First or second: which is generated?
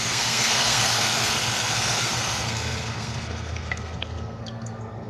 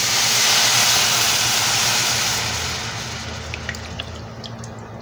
first